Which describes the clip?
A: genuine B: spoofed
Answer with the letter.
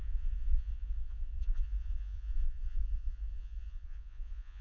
B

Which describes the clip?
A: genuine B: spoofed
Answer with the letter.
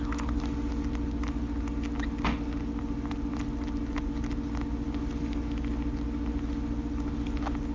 A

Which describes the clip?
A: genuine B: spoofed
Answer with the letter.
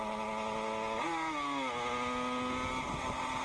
A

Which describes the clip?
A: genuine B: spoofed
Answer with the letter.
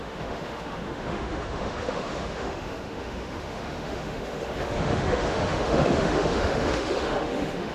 B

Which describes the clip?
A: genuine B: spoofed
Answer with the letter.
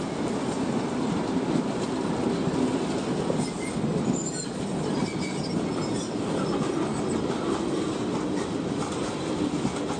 A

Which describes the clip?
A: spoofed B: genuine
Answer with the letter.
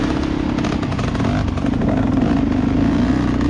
B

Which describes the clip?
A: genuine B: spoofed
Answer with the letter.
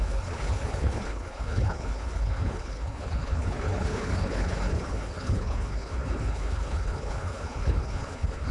B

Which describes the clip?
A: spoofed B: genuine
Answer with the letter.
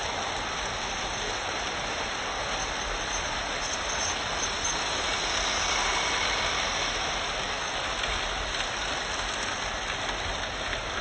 B